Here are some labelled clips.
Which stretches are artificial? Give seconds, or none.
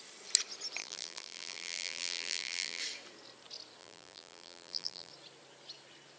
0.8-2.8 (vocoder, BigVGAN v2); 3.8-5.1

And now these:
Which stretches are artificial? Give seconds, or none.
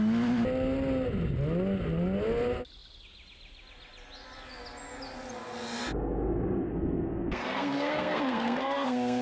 6.7-9.2 (codec, SNAC)